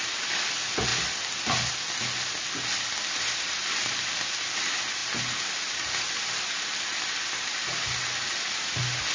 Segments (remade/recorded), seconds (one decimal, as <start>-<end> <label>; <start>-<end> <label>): 0.0-9.1 recorded